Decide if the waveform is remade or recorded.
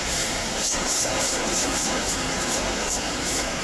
remade